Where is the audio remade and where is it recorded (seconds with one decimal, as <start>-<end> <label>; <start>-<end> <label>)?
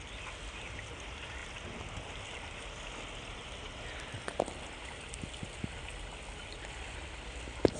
0.0-7.8 recorded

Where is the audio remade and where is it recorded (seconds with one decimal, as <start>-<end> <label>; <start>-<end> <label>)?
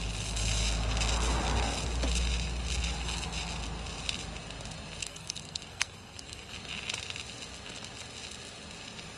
0.0-5.0 recorded; 5.0-6.5 remade; 6.5-9.2 recorded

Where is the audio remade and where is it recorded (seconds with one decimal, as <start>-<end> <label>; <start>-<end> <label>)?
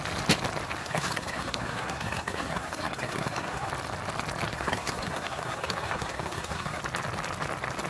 0.0-0.8 recorded; 0.8-3.7 remade; 3.7-4.5 recorded; 4.5-6.8 remade; 6.8-7.9 recorded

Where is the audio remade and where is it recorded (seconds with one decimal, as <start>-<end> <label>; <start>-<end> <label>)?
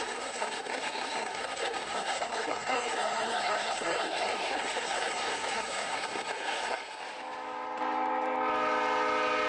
0.0-7.0 remade; 7.0-9.5 recorded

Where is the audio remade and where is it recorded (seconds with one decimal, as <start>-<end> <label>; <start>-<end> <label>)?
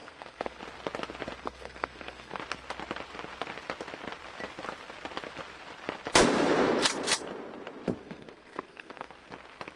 0.0-0.6 remade; 0.6-1.4 recorded; 1.4-2.4 remade; 2.4-8.0 recorded; 8.0-9.1 remade; 9.1-9.8 recorded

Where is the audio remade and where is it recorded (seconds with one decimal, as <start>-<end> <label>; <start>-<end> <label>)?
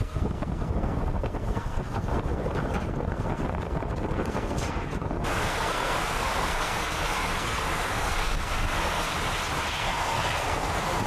0.0-9.1 remade; 9.1-9.6 recorded; 9.6-11.1 remade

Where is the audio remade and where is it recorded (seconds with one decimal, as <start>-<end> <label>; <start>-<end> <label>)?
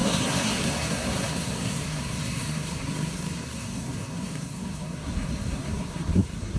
0.0-6.6 remade